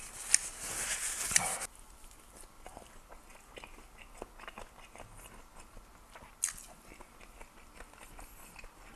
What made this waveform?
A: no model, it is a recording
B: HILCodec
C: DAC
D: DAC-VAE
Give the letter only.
A